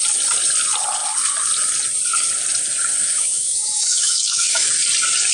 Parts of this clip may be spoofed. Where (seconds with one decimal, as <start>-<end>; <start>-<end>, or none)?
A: 3.0-4.7